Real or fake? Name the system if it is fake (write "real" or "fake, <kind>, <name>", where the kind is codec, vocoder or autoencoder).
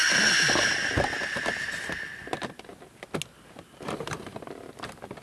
real